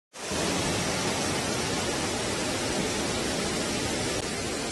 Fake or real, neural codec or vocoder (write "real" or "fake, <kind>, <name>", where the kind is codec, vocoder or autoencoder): real